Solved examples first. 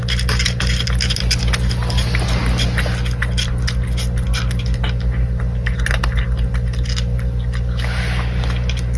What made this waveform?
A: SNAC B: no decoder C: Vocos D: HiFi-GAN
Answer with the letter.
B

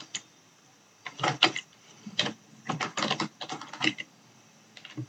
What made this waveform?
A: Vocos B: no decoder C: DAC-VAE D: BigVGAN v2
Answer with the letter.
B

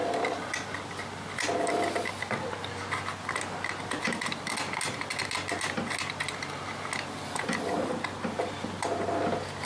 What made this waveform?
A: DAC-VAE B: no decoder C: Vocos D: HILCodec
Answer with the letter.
B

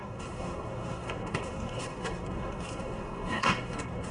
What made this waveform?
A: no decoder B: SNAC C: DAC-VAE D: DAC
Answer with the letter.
B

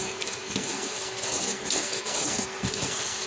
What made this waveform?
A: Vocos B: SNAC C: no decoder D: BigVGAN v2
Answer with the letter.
B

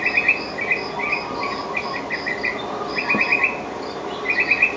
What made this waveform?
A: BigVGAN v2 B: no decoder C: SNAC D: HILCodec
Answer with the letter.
B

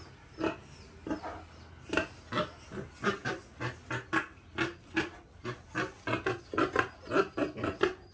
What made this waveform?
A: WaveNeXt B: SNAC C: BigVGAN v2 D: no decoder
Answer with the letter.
D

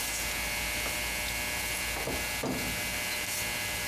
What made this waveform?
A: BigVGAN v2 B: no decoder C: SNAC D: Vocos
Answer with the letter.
B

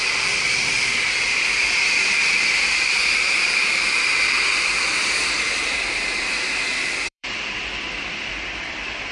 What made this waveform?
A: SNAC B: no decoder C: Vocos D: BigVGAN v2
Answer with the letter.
D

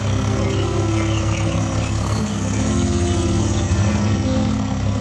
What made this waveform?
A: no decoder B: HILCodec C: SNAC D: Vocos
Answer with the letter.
C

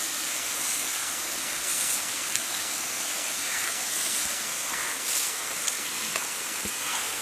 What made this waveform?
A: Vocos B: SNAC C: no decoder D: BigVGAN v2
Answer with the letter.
B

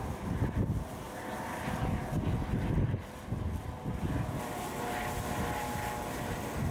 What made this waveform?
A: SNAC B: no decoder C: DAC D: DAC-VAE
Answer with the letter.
B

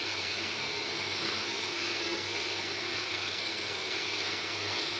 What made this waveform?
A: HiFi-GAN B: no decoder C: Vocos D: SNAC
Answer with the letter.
D